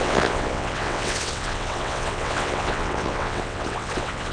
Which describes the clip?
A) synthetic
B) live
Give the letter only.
A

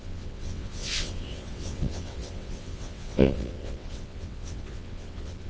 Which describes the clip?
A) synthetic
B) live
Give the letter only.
A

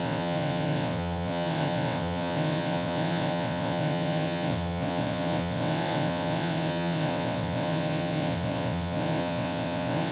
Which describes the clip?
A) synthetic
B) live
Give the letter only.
A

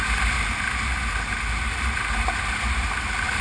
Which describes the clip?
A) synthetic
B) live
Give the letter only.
B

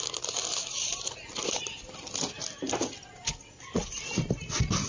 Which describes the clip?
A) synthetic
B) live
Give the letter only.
B